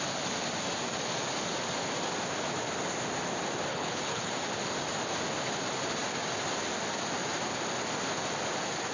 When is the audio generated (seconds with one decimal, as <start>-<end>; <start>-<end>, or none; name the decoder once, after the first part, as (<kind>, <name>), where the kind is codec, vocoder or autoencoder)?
3.7-4.3 (codec, HILCodec)